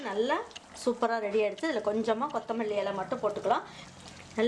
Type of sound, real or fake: real